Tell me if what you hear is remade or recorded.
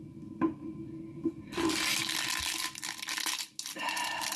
recorded